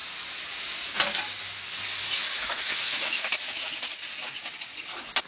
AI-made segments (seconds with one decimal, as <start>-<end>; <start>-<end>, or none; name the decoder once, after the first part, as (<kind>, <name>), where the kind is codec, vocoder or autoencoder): 2.3-3.8 (autoencoder, DAC-VAE)